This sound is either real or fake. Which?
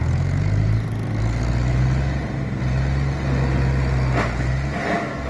real